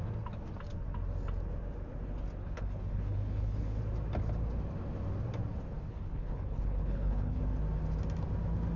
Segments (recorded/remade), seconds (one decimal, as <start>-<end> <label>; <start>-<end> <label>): 0.0-2.4 recorded; 2.4-3.8 remade; 3.8-5.9 recorded; 5.9-7.4 remade; 7.4-8.8 recorded